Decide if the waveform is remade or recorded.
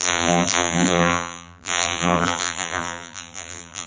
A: remade